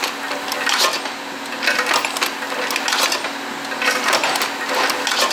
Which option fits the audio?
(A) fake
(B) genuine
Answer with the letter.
B